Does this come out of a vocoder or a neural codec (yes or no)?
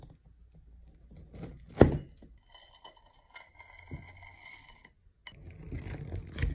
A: no